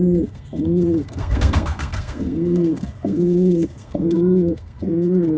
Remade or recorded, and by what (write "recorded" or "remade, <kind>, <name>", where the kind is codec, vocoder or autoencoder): remade, codec, SNAC